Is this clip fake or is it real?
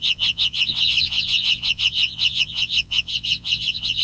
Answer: fake